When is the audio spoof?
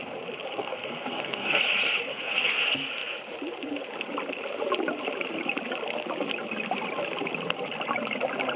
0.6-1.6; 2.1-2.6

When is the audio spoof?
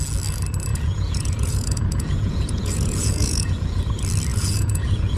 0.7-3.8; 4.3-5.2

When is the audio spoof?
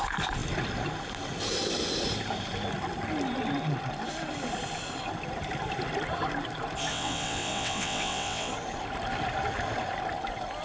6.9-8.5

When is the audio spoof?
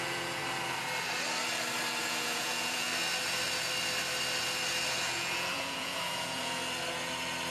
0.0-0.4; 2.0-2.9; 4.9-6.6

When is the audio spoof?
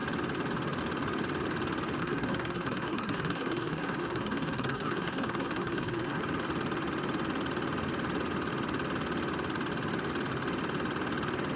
2.0-6.2